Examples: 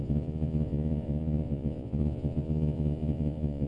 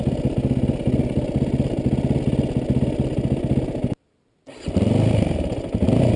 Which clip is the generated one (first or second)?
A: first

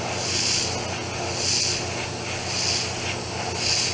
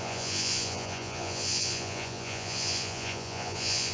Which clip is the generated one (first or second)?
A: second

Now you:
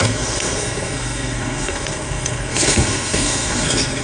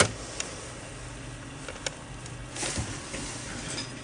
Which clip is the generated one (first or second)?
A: first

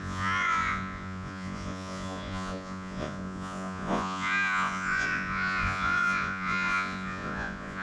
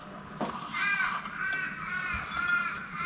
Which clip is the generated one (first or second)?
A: first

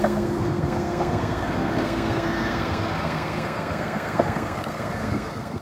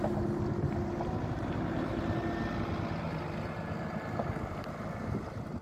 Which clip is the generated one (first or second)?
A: first